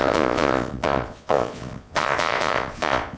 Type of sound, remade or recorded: remade